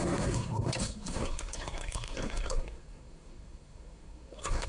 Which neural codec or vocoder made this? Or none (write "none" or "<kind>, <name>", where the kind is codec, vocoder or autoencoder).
codec, SNAC